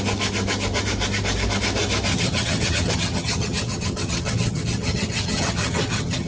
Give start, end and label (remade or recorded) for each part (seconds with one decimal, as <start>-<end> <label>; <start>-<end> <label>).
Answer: 0.0-2.1 recorded; 2.1-6.3 remade

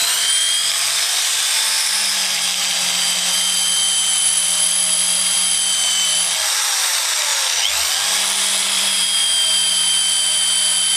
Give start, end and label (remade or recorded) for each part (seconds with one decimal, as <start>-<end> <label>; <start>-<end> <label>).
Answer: 0.0-6.1 remade; 6.1-6.8 recorded; 6.8-7.3 remade; 7.3-8.0 recorded; 8.0-9.2 remade; 9.2-9.7 recorded; 9.7-11.0 remade

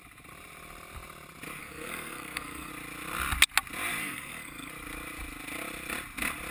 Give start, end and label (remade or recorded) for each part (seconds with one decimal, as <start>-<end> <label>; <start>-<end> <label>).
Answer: 0.0-1.6 recorded; 1.6-2.7 remade; 2.7-4.0 recorded; 4.0-4.7 remade; 4.7-6.5 recorded